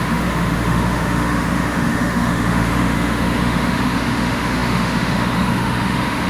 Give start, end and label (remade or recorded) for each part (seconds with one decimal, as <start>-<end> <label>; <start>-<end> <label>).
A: 0.0-6.3 remade